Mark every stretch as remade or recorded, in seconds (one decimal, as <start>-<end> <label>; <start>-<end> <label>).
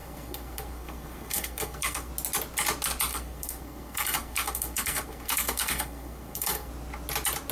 0.0-2.1 remade; 2.1-3.1 recorded; 3.1-6.7 remade; 6.7-7.5 recorded